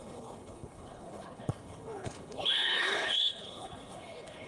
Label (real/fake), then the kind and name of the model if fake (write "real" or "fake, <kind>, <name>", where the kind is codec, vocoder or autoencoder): fake, codec, HILCodec